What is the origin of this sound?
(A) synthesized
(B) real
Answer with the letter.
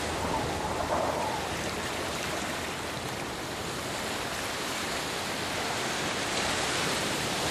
A